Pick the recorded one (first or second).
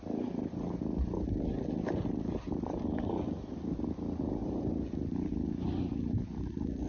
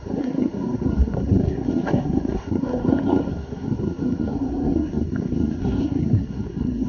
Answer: first